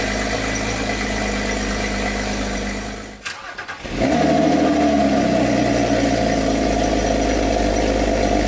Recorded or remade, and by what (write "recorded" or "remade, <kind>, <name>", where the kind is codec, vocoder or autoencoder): recorded